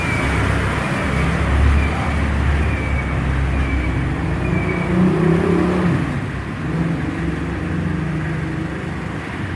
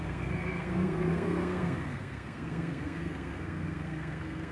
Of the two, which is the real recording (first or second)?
first